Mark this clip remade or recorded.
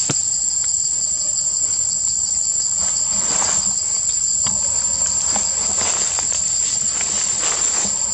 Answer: recorded